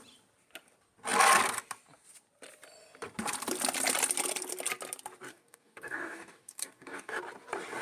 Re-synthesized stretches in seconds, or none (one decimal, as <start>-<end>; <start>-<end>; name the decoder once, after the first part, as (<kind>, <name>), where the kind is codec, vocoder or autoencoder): 5.3-7.2 (codec, DAC)